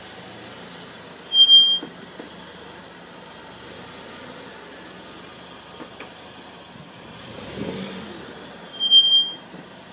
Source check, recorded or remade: recorded